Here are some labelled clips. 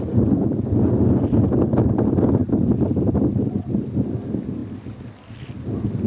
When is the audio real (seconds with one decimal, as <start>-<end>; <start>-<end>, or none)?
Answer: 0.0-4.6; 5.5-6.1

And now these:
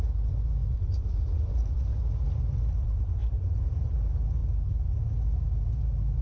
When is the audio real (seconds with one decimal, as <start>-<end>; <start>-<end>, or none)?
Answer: 0.0-0.6; 1.8-3.2; 3.9-6.2

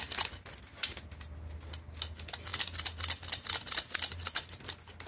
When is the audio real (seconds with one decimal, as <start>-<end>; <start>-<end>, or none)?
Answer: 0.0-5.1